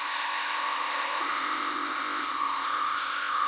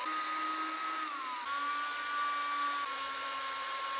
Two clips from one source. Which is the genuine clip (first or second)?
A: second